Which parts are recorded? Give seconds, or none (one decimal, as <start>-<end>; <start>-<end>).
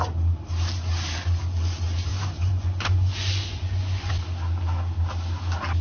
0.0-2.1; 4.1-5.8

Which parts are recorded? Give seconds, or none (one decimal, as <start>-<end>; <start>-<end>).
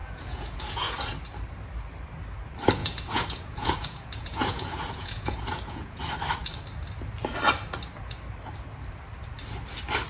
1.1-2.8; 6.0-10.1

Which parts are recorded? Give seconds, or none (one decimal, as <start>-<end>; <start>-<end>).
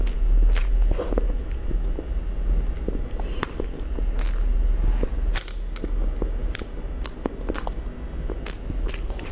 0.0-9.3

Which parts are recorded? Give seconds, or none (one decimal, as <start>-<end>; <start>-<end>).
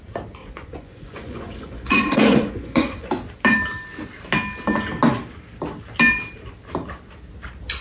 0.0-0.4; 3.1-7.8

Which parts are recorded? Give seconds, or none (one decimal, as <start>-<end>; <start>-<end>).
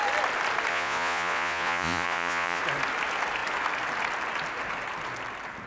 0.0-0.7; 2.6-5.7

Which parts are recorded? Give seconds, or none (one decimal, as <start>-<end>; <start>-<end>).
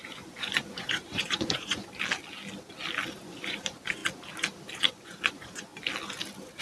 1.9-3.2; 4.0-4.8; 5.7-6.6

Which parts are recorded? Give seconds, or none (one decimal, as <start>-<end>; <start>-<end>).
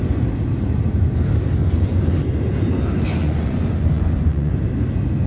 0.0-1.6; 2.2-3.2; 4.5-5.3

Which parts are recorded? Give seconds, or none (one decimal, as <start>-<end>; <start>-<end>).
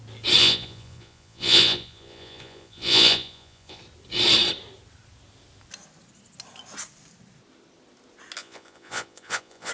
0.0-0.4; 3.8-8.4